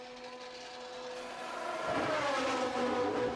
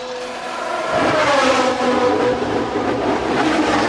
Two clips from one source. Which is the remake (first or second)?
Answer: second